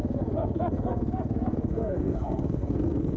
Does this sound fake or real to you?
fake